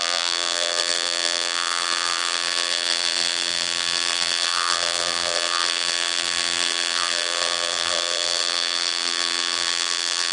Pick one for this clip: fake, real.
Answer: fake